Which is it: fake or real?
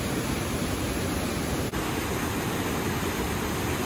real